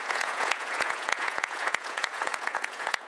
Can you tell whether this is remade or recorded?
remade